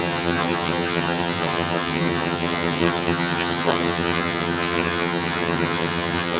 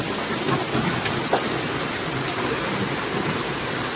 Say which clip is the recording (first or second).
second